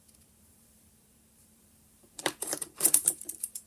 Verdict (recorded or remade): remade